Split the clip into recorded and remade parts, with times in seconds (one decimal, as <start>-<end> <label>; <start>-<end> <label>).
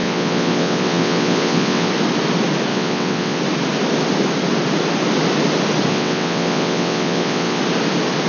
0.0-1.9 remade; 1.9-2.7 recorded; 2.7-3.4 remade; 3.4-5.9 recorded; 5.9-7.6 remade; 7.6-8.3 recorded